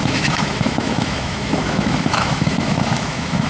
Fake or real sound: fake